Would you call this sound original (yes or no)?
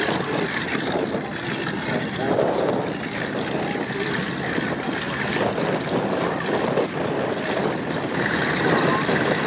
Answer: yes